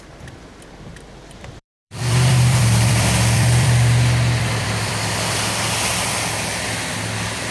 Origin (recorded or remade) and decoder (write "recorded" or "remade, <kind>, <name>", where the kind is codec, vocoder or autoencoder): remade, vocoder, BigVGAN v2